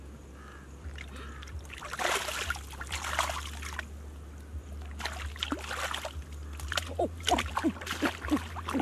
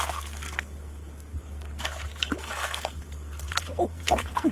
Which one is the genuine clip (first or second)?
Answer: first